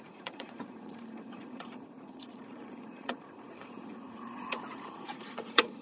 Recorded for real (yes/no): no